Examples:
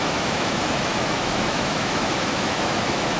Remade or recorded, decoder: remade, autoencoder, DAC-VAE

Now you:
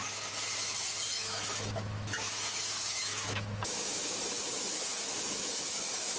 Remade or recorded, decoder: remade, autoencoder, DAC-VAE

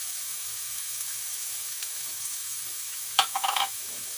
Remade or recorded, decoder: remade, autoencoder, DAC-VAE